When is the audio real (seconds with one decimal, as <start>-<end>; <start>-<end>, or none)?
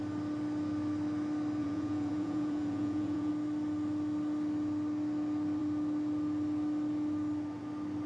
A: 0.0-1.6; 3.3-8.1